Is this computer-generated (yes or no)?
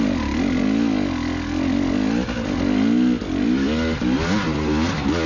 no